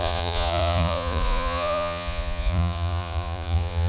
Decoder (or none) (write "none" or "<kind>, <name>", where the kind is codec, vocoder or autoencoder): vocoder, Vocos